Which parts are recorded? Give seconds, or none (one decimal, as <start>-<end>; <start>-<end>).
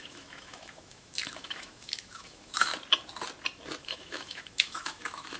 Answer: 2.7-3.8